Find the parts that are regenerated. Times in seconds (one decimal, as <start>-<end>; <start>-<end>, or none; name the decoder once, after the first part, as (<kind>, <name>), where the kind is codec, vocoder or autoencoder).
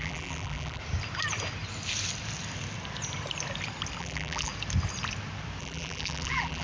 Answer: 0.0-0.8 (vocoder, BigVGAN v2); 4.0-4.5; 5.6-6.6